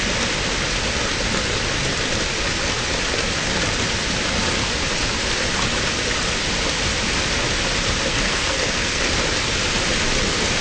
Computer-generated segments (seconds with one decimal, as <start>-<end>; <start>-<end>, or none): 8.1-9.0